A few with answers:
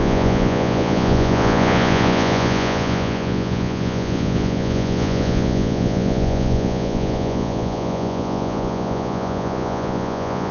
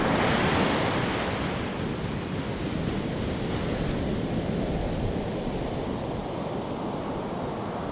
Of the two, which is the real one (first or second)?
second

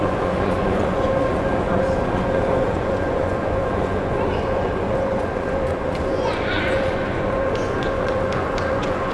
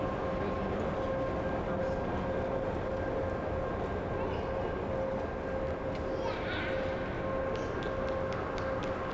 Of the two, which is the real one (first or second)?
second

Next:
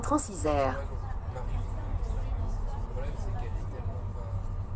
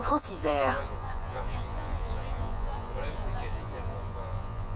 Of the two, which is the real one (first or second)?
first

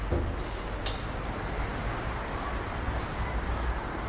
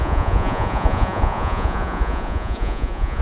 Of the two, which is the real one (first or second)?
first